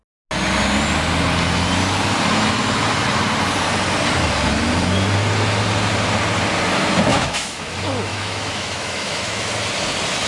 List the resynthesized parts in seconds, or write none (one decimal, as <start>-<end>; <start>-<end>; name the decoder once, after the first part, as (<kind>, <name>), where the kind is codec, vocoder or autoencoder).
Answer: 7.1-7.7 (autoencoder, DAC-VAE); 8.1-9.5

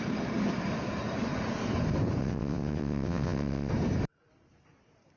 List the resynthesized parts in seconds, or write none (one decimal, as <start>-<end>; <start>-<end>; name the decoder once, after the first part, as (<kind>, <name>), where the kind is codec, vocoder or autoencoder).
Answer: 2.2-3.7 (vocoder, WaveNeXt)

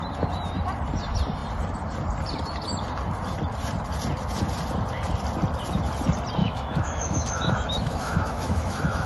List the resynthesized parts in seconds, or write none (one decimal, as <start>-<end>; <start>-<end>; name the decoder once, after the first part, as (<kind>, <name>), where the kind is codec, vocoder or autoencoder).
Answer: 6.4-9.1 (autoencoder, DAC-VAE)

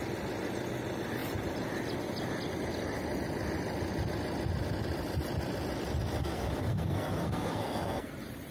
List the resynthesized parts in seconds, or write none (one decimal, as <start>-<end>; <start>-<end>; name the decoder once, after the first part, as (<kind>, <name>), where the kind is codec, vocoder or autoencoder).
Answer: 6.2-8.1 (codec, SNAC)

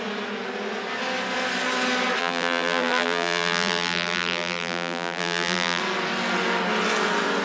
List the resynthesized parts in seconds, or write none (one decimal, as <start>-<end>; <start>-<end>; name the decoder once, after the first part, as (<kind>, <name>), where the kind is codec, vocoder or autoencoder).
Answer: 2.2-5.8 (vocoder, BigVGAN v2)

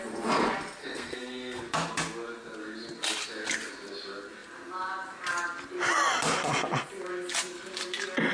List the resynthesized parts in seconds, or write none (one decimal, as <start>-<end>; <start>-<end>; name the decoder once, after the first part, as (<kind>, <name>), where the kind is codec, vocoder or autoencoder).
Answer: 0.8-1.6 (codec, SNAC)

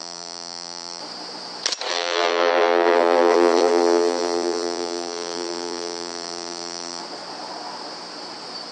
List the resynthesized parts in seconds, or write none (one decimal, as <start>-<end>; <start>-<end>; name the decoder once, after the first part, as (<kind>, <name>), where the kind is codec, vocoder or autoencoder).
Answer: 0.0-1.0 (vocoder, BigVGAN v2); 1.9-7.0